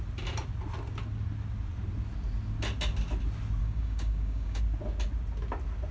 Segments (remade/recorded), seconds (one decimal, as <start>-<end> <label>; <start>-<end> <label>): 0.0-3.6 recorded; 3.6-4.6 remade; 4.6-5.9 recorded